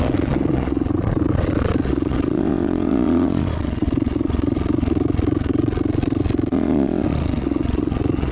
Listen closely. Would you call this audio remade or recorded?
remade